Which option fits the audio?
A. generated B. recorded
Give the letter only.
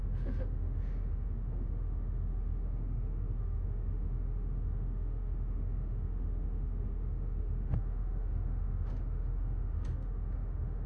A